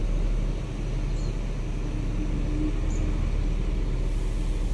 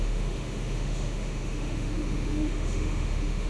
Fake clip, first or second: second